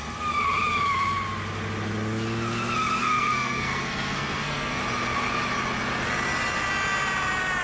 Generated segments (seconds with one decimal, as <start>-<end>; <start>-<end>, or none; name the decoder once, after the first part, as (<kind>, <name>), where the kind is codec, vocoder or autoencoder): 3.0-4.8 (codec, SNAC)